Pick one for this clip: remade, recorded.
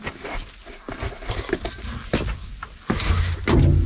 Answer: recorded